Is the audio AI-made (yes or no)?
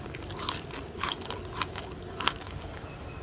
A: no